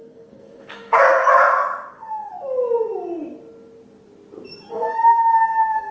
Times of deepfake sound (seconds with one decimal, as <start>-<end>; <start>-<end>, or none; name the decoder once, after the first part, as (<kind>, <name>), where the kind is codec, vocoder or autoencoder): 0.0-1.2 (codec, SNAC); 1.9-2.3; 4.7-5.9

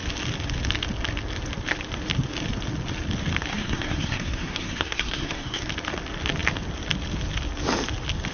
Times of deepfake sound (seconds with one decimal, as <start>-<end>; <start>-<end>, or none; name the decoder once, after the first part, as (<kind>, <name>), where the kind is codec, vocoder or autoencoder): 3.5-5.7 (codec, SNAC)

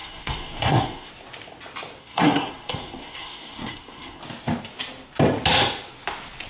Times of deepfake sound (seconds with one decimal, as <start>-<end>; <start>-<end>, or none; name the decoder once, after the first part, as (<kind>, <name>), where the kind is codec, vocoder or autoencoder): 0.0-1.1 (codec, SNAC); 2.0-4.2

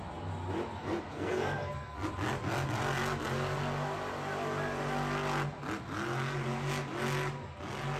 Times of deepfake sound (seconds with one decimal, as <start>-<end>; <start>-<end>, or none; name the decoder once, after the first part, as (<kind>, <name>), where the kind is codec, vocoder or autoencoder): 0.8-2.1 (codec, SNAC)

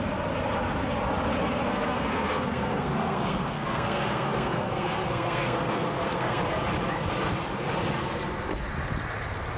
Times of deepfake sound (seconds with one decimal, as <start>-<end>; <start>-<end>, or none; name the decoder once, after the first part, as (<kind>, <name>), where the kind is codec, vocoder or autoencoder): 1.6-6.4 (codec, SNAC)

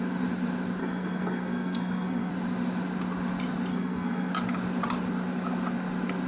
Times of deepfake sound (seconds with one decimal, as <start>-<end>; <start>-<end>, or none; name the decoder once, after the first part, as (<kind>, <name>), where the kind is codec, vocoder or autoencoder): 0.8-2.3 (codec, SNAC); 3.7-4.3

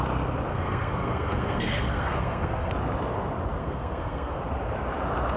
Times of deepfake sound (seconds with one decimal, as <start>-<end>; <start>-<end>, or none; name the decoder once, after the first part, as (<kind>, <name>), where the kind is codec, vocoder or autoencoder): 0.5-2.7 (codec, SNAC); 3.6-4.4

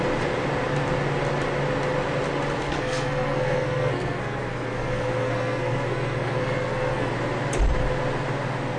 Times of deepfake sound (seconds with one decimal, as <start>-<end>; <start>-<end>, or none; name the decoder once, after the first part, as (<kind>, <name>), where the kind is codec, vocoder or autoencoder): 2.6-7.1 (codec, SNAC)